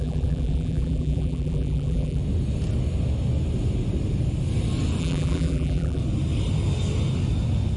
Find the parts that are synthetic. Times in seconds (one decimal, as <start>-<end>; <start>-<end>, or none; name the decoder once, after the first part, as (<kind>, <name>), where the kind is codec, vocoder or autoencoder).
0.0-2.2 (vocoder, BigVGAN v2); 5.0-6.0